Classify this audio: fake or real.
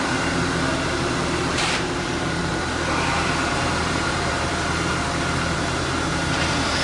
fake